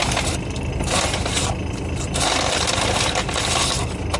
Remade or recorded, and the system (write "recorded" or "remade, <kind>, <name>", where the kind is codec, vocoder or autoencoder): recorded